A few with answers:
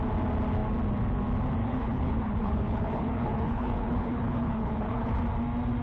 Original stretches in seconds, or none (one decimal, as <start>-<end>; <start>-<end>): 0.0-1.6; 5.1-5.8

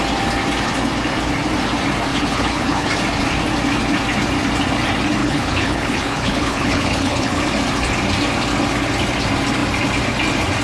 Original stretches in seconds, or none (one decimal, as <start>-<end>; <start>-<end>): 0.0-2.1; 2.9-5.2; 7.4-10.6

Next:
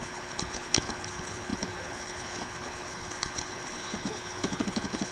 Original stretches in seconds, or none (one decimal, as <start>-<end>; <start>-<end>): none

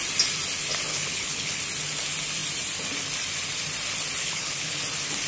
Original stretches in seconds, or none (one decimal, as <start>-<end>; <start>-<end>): 0.0-0.9; 1.6-4.2; 4.8-5.3

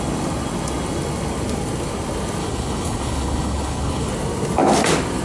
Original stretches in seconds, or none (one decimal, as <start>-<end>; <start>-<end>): 0.0-2.4; 4.1-5.2

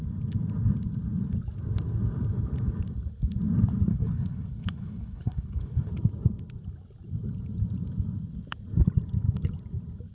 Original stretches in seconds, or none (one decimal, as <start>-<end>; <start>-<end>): 0.0-3.9; 5.9-10.1